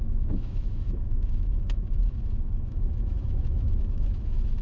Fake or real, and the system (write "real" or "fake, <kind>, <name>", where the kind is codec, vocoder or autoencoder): fake, autoencoder, DAC-VAE